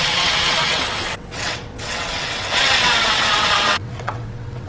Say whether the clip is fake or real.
fake